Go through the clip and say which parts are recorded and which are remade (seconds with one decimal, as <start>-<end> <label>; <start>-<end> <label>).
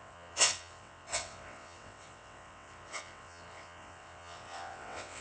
0.0-5.2 remade